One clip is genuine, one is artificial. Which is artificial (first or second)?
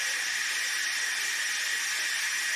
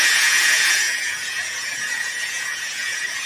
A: second